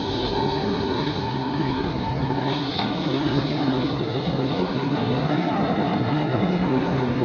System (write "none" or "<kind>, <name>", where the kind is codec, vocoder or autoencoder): codec, SNAC